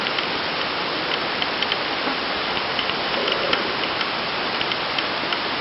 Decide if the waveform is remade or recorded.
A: remade